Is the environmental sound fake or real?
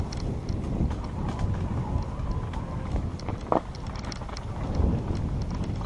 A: real